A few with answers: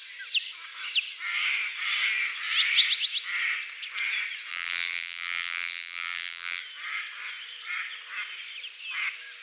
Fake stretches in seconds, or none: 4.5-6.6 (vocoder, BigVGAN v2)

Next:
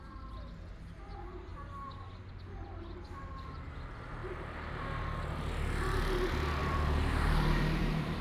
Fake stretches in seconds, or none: 6.6-8.2 (vocoder, BigVGAN v2)